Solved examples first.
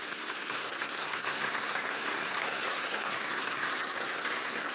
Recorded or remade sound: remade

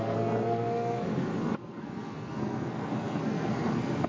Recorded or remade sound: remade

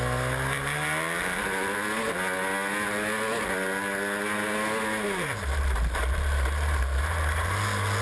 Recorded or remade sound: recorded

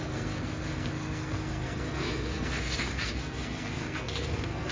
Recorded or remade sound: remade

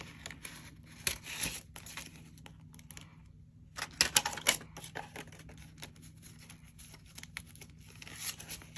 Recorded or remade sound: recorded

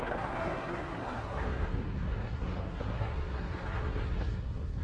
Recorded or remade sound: remade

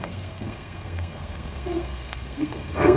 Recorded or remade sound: remade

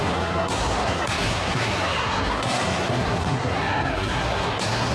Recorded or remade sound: remade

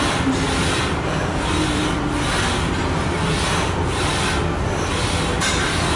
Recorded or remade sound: recorded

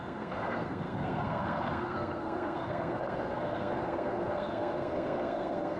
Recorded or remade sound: remade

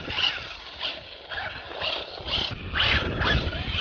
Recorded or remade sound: recorded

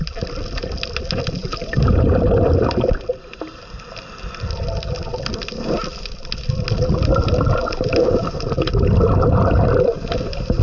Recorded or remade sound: recorded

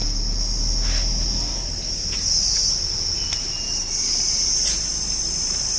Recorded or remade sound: recorded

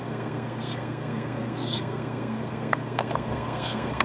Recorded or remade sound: remade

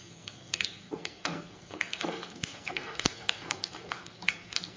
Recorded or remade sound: remade